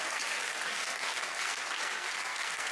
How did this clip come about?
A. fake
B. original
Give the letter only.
A